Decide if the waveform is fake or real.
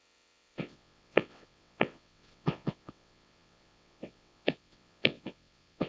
fake